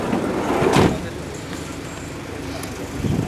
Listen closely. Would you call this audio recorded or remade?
recorded